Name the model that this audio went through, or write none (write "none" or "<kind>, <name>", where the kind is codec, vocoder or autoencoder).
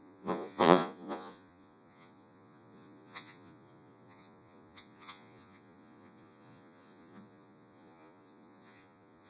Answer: vocoder, Vocos